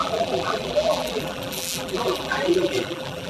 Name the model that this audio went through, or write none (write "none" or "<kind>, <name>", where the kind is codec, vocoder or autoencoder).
vocoder, BigVGAN v2